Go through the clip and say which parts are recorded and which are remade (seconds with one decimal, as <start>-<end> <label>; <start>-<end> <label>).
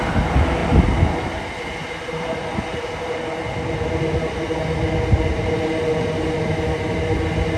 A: 0.0-7.6 recorded